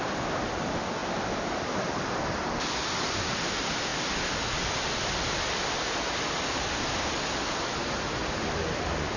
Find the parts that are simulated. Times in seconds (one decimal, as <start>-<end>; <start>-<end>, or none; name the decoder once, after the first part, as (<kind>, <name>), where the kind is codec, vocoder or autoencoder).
1.0-2.1 (vocoder, BigVGAN v2); 7.8-8.4